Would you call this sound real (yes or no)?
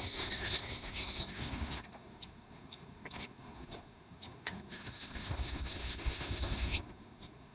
no